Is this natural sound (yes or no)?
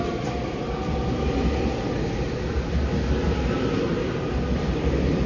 yes